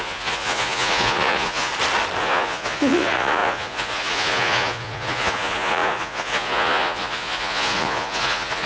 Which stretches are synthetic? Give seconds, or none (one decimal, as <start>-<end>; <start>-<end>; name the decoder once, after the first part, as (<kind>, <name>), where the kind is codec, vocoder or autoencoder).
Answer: 0.0-1.7 (vocoder, Vocos); 2.2-8.7